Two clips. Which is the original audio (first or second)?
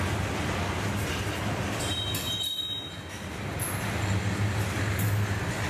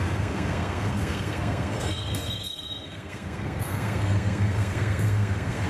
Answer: first